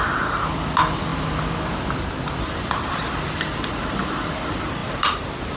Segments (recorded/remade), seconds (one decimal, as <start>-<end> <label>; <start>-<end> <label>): 0.0-5.6 recorded